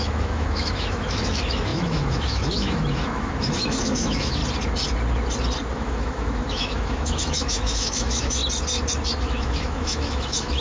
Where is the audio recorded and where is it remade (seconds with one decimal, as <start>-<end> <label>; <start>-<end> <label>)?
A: 0.0-4.4 remade; 4.4-5.7 recorded; 5.7-8.4 remade; 8.4-9.2 recorded; 9.2-10.6 remade